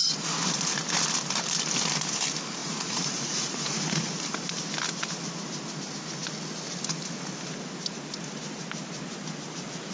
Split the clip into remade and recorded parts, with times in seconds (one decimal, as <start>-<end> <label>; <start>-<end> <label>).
0.0-2.6 recorded; 2.6-4.1 remade; 4.1-9.9 recorded